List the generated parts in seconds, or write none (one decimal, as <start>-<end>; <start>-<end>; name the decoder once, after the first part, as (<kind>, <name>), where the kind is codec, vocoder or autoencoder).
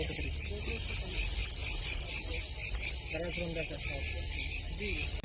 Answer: none